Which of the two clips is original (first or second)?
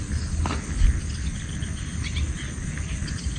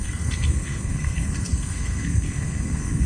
first